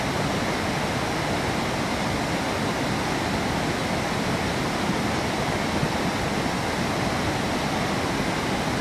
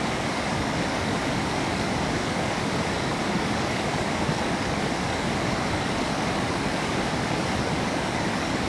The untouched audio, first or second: first